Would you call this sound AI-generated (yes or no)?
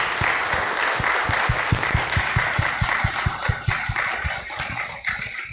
no